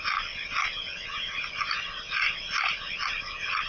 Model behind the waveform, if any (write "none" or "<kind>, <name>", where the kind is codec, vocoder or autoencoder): none